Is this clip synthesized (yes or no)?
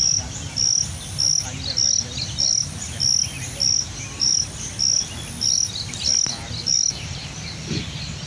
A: no